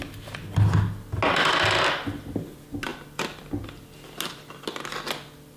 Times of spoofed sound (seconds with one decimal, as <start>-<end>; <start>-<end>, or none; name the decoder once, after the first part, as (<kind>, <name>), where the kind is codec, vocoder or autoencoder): 2.9-4.6 (vocoder, BigVGAN v2)